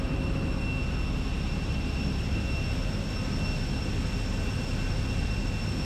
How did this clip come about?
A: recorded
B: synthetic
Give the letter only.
A